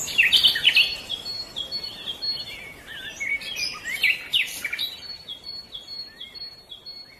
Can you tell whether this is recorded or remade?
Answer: recorded